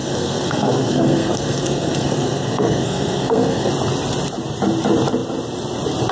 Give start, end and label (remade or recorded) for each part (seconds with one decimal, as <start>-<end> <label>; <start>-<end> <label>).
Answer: 0.0-3.7 remade; 3.7-6.1 recorded